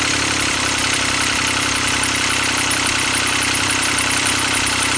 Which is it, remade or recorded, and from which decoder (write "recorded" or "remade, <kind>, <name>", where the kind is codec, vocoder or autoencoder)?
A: remade, vocoder, BigVGAN v2